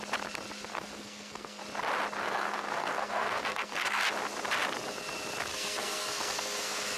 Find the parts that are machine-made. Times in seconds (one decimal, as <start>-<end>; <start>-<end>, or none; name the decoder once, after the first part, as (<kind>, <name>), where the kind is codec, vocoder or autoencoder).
0.7-1.6 (codec, SNAC); 2.2-4.0; 5.5-7.0